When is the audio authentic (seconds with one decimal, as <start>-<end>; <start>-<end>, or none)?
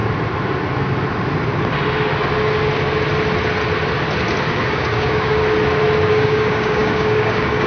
0.0-4.5; 5.4-6.1